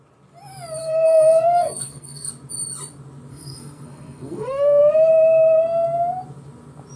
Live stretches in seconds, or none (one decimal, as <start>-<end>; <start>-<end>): 0.0-0.8; 2.3-3.3; 4.8-7.0